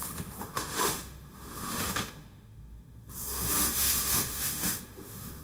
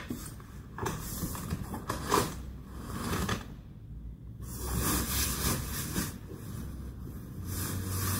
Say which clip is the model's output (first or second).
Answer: first